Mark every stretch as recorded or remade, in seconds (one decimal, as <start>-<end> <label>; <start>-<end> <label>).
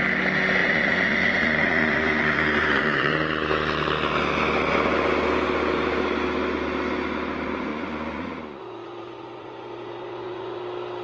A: 0.0-0.6 recorded; 0.6-3.1 remade; 3.1-7.7 recorded; 7.7-10.6 remade; 10.6-11.0 recorded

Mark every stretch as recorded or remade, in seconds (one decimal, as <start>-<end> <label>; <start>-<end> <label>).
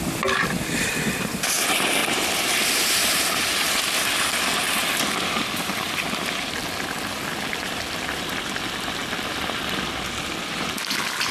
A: 0.0-2.0 recorded; 2.0-3.8 remade; 3.8-11.3 recorded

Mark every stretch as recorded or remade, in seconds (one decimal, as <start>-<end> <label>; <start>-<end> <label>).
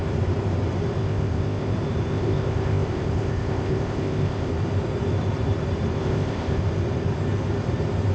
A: 0.0-1.0 recorded; 1.0-1.7 remade; 1.7-2.1 recorded; 2.1-4.5 remade; 4.5-6.0 recorded; 6.0-6.6 remade; 6.6-8.1 recorded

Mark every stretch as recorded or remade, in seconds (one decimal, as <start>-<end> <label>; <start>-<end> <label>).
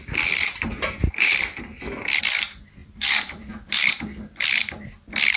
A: 0.0-0.4 recorded; 0.4-1.4 remade; 1.4-2.8 recorded; 2.8-4.0 remade; 4.0-5.4 recorded